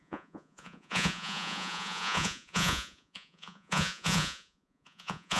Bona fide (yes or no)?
no